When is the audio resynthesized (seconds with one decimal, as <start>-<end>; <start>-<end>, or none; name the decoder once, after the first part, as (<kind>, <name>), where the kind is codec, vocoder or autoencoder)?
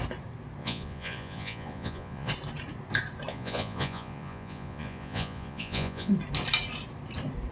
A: 0.6-2.3 (vocoder, Vocos); 3.3-6.1